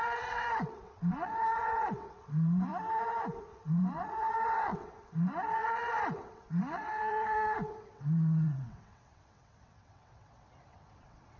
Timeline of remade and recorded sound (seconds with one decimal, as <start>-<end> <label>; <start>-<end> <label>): 0.0-2.7 remade; 2.7-3.5 recorded; 3.5-11.4 remade